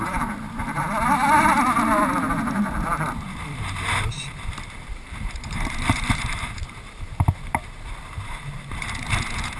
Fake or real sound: fake